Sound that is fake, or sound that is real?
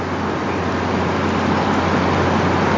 real